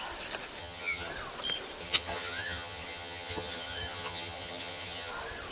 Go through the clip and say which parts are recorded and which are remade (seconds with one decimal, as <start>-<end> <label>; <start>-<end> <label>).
0.0-0.6 recorded; 0.6-1.1 remade; 1.1-1.8 recorded; 1.8-5.1 remade; 5.1-5.5 recorded